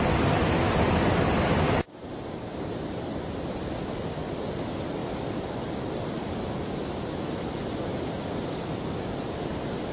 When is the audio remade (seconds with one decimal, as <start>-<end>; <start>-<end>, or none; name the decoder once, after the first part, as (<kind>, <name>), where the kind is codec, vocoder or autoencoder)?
2.5-4.2 (vocoder, BigVGAN v2); 5.0-9.9

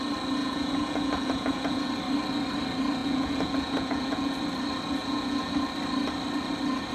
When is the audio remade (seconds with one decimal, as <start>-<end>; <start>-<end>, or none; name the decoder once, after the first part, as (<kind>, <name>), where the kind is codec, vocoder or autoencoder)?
0.4-1.9 (vocoder, Vocos); 3.0-4.4; 5.0-5.5

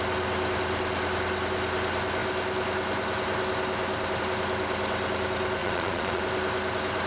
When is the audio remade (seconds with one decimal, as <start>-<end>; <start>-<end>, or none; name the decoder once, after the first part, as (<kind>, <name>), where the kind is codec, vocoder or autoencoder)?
5.6-6.2 (vocoder, Vocos)